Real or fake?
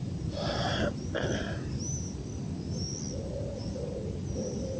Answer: real